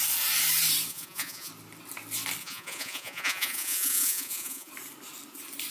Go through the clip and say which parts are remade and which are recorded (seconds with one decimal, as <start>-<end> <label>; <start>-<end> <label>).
0.0-0.9 recorded; 0.9-1.5 remade; 1.5-2.4 recorded; 2.4-4.7 remade; 4.7-5.7 recorded